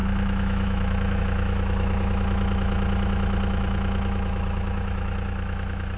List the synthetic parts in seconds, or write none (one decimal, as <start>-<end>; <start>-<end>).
0.0-6.0